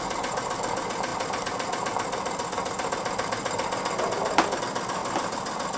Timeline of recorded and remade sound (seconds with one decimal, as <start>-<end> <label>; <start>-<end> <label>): 0.0-1.1 recorded; 1.1-4.6 remade; 4.6-5.8 recorded